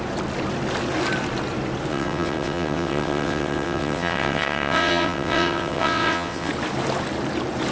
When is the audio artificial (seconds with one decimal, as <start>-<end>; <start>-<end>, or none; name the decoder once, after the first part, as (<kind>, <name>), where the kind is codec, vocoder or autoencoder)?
1.9-6.5 (vocoder, WaveNeXt)